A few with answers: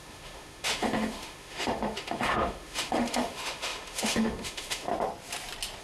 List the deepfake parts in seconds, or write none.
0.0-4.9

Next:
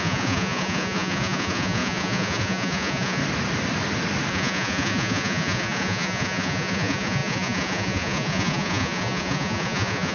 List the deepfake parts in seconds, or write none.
0.0-3.2; 4.3-10.1

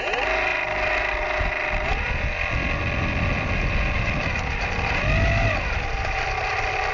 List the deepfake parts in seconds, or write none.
none

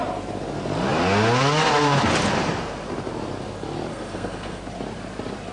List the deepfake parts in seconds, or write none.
3.9-4.6

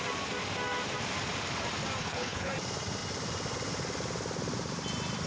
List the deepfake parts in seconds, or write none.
2.0-2.5

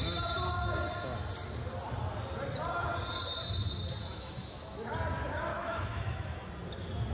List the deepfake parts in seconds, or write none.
4.0-4.9; 5.5-6.5

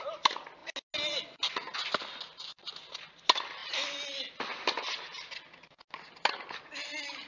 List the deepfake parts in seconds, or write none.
none